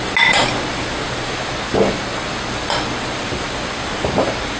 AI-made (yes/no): no